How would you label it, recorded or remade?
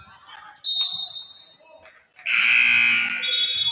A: recorded